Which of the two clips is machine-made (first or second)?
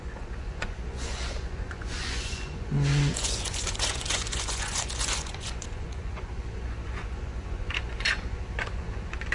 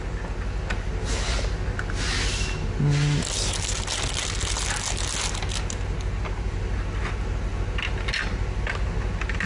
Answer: first